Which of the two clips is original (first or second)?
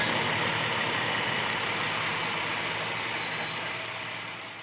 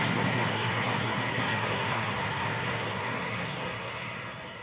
first